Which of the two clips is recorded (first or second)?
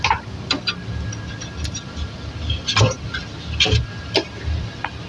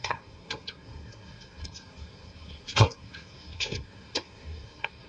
first